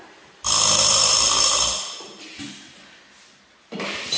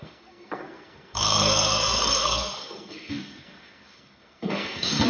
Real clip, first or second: first